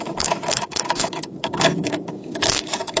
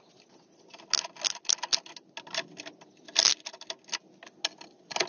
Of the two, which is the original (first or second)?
second